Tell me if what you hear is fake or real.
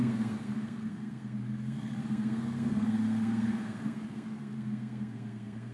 fake